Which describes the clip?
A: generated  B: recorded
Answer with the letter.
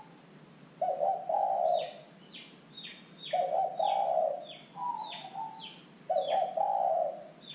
B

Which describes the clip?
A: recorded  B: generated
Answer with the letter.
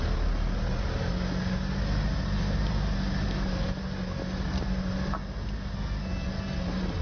A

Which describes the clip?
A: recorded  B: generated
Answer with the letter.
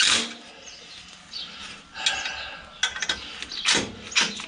A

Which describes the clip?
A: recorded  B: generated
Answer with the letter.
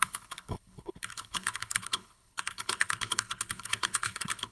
B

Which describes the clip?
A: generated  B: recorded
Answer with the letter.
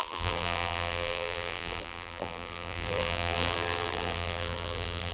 A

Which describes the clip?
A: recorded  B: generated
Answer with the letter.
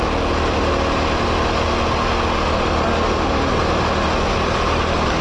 A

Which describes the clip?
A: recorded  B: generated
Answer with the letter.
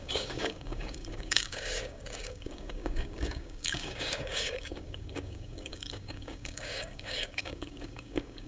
B